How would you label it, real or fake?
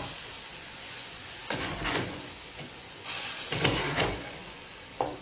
fake